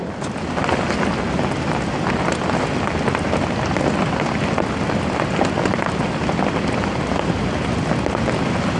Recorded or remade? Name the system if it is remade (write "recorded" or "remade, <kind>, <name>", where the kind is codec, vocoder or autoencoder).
recorded